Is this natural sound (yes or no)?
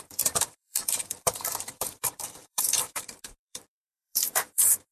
no